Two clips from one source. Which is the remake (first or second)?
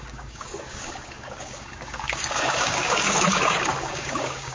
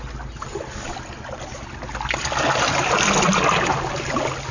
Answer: first